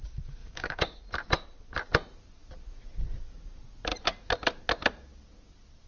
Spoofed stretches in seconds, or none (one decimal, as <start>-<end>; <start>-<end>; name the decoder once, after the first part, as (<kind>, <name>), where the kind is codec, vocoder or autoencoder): 0.4-1.0 (codec, DAC)